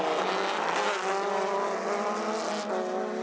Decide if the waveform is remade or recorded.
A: recorded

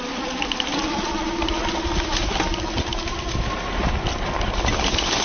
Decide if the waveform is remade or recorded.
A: recorded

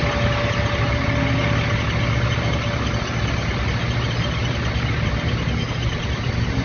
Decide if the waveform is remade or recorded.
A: recorded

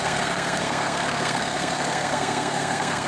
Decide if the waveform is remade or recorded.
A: remade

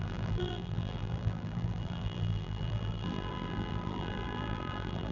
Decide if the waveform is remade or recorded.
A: remade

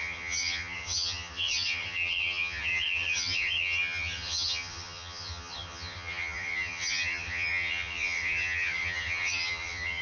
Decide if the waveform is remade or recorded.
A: remade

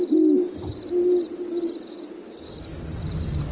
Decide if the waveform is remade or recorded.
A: recorded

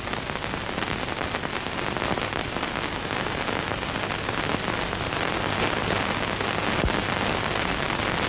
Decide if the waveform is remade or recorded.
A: recorded